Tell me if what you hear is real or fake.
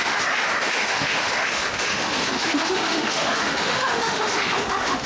fake